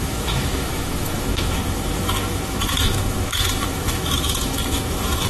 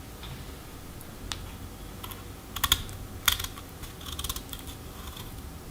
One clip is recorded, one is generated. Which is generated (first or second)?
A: first